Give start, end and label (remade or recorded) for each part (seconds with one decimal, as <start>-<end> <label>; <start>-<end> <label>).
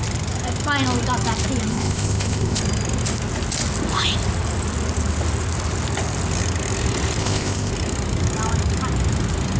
0.0-1.7 recorded; 1.7-2.6 remade; 2.6-7.2 recorded; 7.2-7.7 remade; 7.7-9.6 recorded